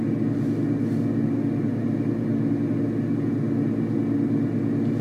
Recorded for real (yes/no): yes